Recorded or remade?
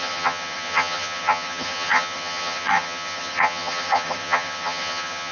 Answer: remade